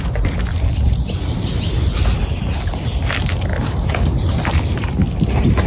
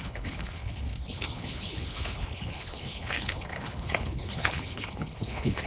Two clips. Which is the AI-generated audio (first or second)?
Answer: second